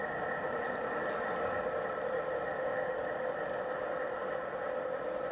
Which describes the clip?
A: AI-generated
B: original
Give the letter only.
B